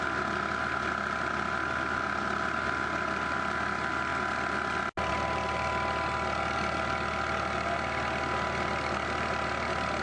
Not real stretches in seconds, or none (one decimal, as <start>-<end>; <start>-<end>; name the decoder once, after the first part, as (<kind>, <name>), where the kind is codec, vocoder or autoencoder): none